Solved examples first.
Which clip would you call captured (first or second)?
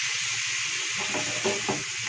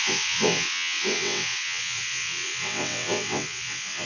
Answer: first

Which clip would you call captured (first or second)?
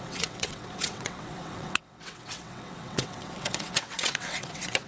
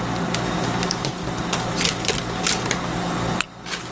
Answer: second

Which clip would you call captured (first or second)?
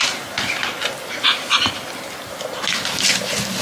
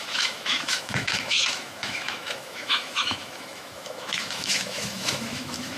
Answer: first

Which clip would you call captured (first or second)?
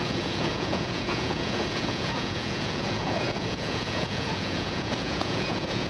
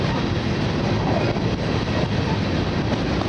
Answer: second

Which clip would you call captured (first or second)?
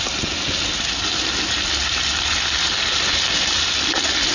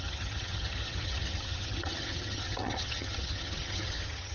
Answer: first